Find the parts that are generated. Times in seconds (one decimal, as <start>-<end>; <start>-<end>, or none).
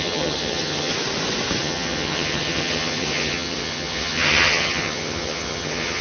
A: 0.0-0.9; 1.6-6.0